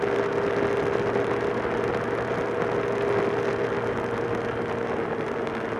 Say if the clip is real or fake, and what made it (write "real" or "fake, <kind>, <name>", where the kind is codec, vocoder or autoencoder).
real